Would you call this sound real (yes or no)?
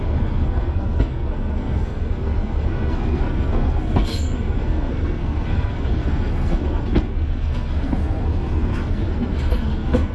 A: no